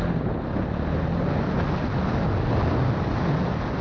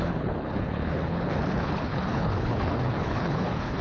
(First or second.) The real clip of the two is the first